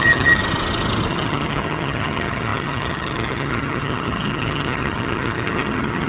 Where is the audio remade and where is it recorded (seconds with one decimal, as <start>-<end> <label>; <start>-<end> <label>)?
0.0-0.4 remade; 0.4-1.1 recorded; 1.1-6.1 remade

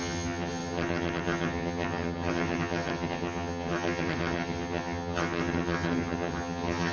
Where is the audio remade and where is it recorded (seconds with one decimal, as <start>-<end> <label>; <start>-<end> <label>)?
0.0-6.9 remade